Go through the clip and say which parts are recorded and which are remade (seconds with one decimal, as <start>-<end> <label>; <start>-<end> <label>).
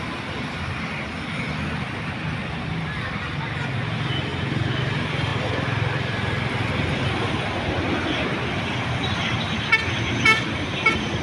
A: 0.0-11.2 recorded